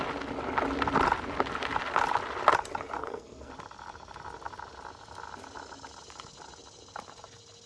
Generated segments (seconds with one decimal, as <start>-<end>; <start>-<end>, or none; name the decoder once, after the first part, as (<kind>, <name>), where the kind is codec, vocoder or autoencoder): 3.0-3.5 (codec, SNAC)